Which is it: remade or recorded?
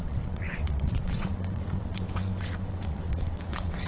remade